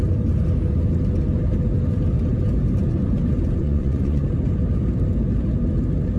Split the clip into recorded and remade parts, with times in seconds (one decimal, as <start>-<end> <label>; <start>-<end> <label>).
0.0-3.6 recorded; 3.6-4.2 remade; 4.2-6.2 recorded